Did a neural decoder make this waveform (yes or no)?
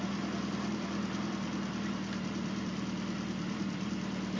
yes